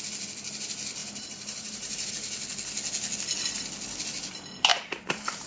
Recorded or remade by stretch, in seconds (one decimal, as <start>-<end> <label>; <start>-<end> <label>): 0.0-1.0 recorded; 1.0-2.1 remade; 2.1-4.7 recorded; 4.7-5.5 remade